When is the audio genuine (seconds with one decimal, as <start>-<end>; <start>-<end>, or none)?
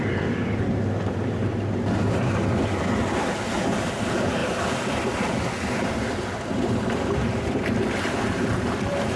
none